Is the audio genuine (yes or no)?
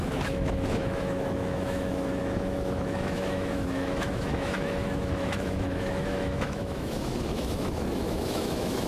no